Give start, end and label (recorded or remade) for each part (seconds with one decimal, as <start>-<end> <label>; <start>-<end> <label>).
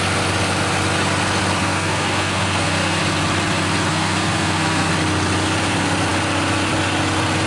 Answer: 0.0-1.6 recorded; 1.6-3.0 remade; 3.0-3.9 recorded; 3.9-4.9 remade; 4.9-7.5 recorded